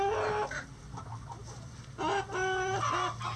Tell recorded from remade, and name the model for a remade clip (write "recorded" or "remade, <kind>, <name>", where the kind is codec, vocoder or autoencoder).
recorded